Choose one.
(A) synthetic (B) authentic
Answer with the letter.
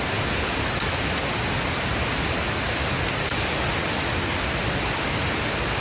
B